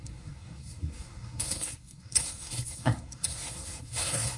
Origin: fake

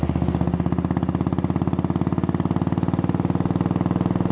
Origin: real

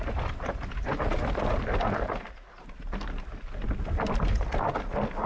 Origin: real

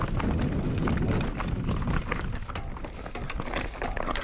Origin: real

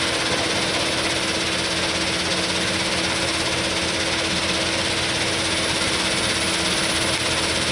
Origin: real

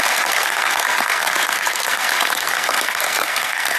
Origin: fake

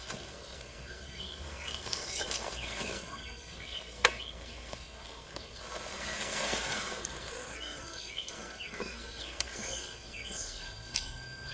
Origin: fake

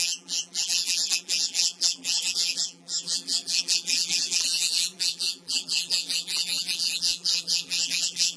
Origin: fake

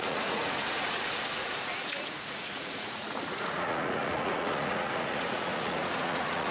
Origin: fake